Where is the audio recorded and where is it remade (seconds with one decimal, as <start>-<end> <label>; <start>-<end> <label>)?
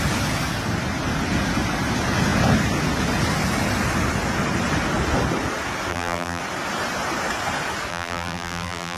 0.0-5.9 recorded; 5.9-6.4 remade; 6.4-7.9 recorded; 7.9-9.0 remade